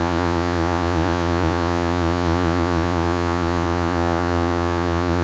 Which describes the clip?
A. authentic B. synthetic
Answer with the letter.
B